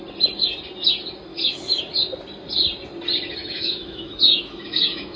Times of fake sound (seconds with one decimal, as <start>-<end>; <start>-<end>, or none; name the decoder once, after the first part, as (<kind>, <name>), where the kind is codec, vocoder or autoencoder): 1.3-1.8 (autoencoder, DAC-VAE); 3.4-5.2